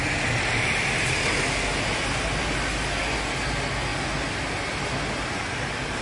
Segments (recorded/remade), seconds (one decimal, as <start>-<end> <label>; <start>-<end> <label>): 0.0-6.0 recorded

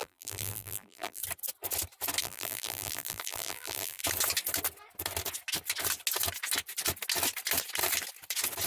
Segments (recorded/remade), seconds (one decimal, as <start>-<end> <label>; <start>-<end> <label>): 0.0-1.2 remade; 1.2-2.2 recorded; 2.2-4.0 remade; 4.0-8.7 recorded

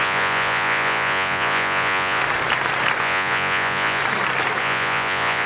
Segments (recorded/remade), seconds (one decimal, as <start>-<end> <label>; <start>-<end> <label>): 0.0-2.2 remade; 2.2-3.0 recorded; 3.0-4.0 remade; 4.0-4.6 recorded; 4.6-5.5 remade

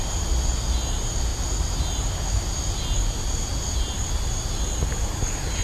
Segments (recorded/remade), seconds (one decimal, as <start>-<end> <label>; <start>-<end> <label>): 0.0-5.6 recorded

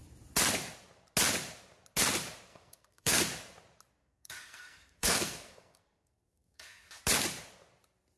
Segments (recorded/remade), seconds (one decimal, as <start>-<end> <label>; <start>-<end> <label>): 0.0-2.5 recorded; 2.5-3.2 remade; 3.2-4.0 recorded; 4.0-7.0 remade; 7.0-8.2 recorded

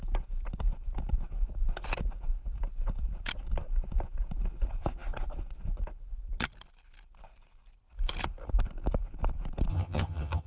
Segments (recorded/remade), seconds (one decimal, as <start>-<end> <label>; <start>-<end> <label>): 0.0-9.7 recorded; 9.7-10.5 remade